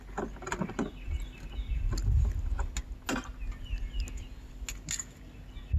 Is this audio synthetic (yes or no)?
no